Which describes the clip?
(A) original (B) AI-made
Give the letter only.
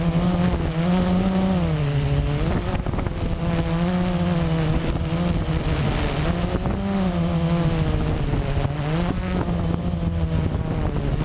A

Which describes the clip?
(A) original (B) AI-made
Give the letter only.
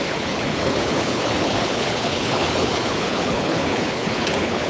B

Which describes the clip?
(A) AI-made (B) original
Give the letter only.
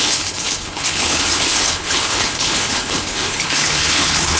A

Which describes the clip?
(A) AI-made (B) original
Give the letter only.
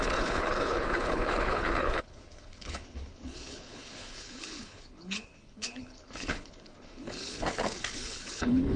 A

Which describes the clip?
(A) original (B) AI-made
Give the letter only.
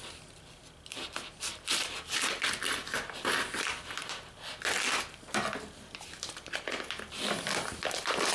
A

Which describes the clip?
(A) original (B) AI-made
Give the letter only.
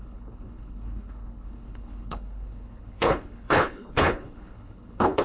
B